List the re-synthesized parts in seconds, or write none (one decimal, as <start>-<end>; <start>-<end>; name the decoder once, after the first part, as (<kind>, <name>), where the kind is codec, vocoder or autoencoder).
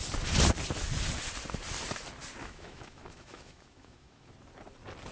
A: 2.4-4.3 (autoencoder, DAC-VAE)